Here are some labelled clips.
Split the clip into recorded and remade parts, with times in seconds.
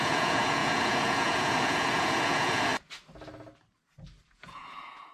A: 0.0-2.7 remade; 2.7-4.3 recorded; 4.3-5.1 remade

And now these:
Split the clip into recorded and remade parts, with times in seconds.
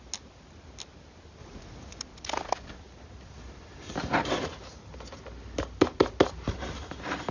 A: 0.0-1.4 recorded; 1.4-2.0 remade; 2.0-7.3 recorded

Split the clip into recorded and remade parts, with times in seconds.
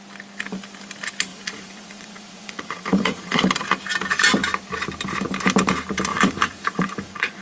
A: 0.0-1.3 recorded; 1.3-3.4 remade; 3.4-6.1 recorded; 6.1-7.4 remade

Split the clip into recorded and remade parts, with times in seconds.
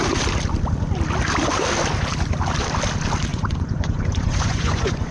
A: 0.0-3.3 recorded; 3.3-5.1 remade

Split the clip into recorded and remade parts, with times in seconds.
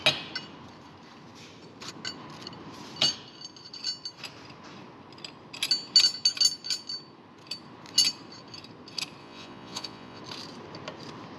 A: 0.0-9.2 recorded; 9.2-10.2 remade; 10.2-11.4 recorded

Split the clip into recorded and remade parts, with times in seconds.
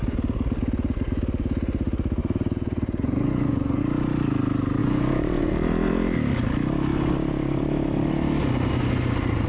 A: 0.0-2.2 recorded; 2.2-3.8 remade; 3.8-4.8 recorded; 4.8-5.5 remade; 5.5-9.5 recorded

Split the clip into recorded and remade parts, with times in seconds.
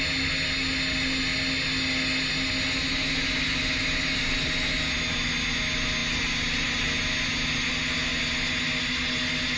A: 0.0-9.6 recorded